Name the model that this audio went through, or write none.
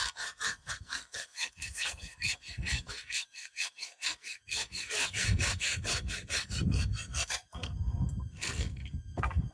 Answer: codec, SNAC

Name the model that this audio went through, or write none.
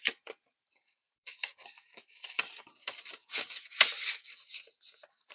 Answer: vocoder, BigVGAN v2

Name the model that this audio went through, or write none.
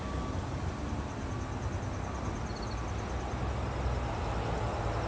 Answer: none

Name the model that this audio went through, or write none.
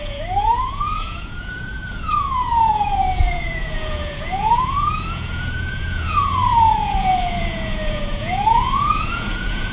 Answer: vocoder, Vocos